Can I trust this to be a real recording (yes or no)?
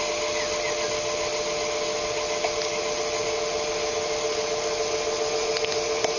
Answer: yes